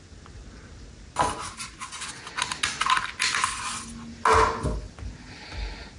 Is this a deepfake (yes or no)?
no